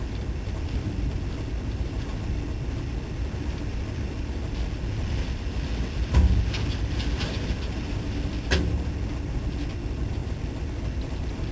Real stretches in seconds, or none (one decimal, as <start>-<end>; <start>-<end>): 0.0-11.5